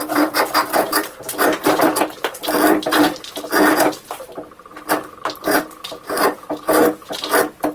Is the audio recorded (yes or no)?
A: no